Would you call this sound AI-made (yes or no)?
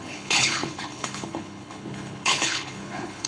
yes